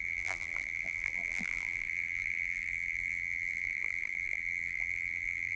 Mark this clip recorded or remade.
remade